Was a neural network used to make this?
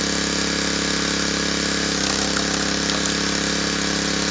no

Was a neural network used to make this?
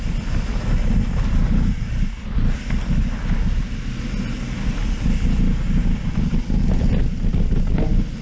no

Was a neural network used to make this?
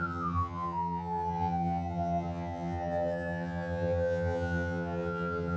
yes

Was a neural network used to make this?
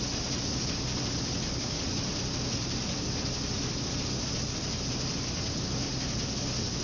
no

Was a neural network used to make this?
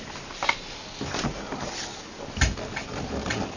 no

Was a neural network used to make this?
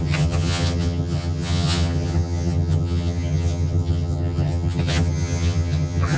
yes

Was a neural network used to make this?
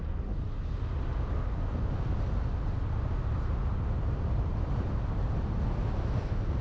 no